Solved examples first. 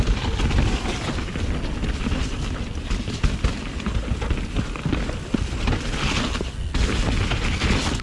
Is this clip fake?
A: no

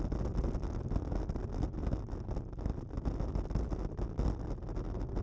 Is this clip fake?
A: no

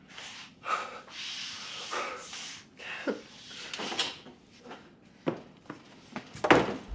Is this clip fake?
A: no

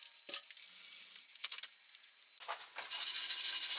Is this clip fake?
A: no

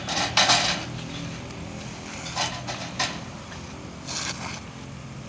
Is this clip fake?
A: no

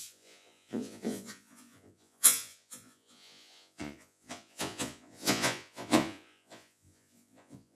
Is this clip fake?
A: yes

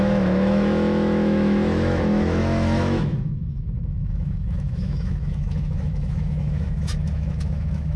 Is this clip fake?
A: yes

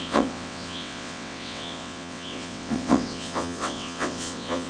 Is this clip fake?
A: yes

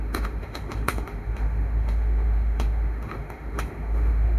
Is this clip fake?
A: yes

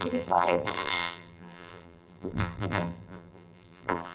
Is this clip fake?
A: yes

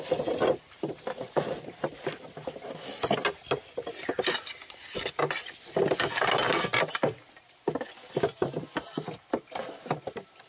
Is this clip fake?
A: no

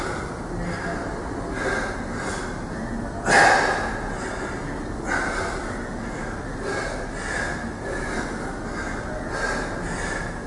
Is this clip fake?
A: no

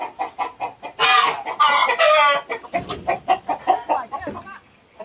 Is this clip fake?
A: no